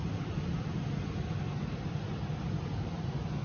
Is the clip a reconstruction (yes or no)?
no